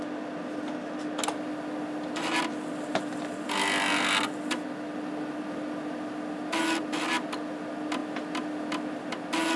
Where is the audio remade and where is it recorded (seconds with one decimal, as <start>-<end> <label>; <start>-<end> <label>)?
0.0-9.6 recorded